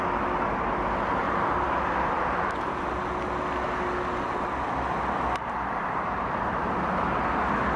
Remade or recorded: recorded